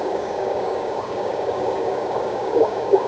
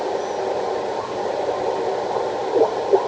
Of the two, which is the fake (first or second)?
first